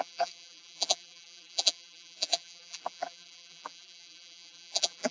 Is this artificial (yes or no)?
yes